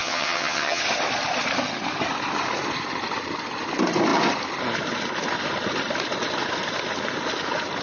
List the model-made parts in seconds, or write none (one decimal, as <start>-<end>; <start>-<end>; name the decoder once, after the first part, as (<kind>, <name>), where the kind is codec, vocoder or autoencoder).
0.0-0.8 (vocoder, HiFi-GAN)